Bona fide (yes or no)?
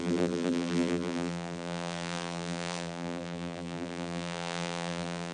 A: no